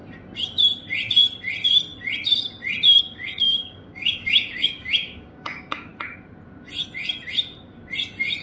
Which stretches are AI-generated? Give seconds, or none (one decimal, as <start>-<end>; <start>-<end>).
3.0-5.9